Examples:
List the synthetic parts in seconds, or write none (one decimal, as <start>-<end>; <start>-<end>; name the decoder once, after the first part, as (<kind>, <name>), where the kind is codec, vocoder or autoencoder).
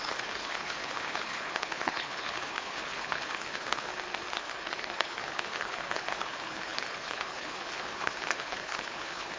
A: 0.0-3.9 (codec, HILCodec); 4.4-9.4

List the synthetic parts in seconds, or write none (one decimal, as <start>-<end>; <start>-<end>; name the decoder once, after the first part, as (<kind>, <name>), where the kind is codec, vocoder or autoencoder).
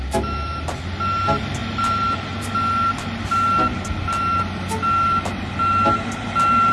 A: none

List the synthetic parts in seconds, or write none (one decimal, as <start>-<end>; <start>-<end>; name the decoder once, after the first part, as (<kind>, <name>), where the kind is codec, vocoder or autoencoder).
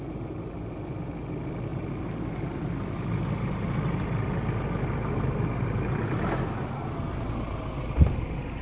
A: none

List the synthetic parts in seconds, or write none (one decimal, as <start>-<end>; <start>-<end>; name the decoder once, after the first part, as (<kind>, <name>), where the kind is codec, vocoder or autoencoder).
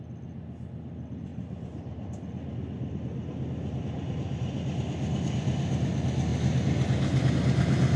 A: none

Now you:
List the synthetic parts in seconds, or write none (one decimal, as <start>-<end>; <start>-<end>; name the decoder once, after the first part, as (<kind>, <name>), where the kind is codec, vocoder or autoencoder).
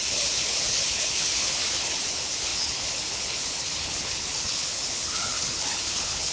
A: 0.0-6.3 (codec, HILCodec)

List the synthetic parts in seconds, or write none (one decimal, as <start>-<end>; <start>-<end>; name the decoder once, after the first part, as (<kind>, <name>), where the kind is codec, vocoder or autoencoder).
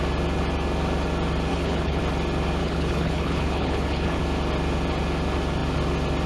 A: 1.5-2.0 (codec, HILCodec); 2.6-4.2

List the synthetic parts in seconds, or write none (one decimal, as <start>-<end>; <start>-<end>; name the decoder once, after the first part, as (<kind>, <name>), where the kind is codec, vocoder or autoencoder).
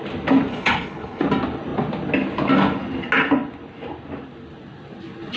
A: 0.5-1.2 (codec, HILCodec)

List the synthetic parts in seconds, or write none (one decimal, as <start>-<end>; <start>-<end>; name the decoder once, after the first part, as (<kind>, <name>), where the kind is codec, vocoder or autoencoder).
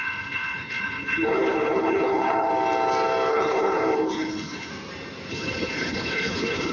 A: 0.0-2.5 (codec, HILCodec); 3.3-4.7; 5.3-6.7